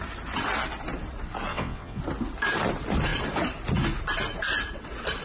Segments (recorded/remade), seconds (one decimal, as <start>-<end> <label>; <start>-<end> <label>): 0.0-1.5 recorded; 1.5-2.0 remade; 2.0-5.2 recorded